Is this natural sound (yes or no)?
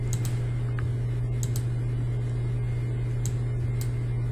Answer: yes